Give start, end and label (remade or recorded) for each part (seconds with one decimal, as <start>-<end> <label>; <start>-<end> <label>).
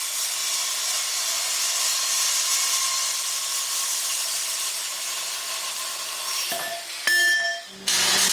0.0-8.3 recorded